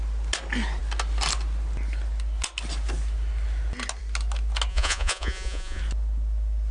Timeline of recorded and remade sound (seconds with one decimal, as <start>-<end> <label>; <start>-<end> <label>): 0.0-4.7 recorded; 4.7-5.8 remade; 5.8-6.7 recorded